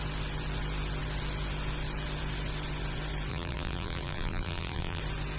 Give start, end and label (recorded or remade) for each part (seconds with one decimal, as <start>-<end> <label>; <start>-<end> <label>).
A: 0.0-3.3 recorded; 3.3-5.0 remade; 5.0-5.4 recorded